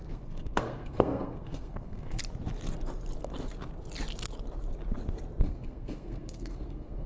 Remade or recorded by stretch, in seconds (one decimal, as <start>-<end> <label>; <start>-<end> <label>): 0.0-2.2 remade; 2.2-5.4 recorded; 5.4-7.1 remade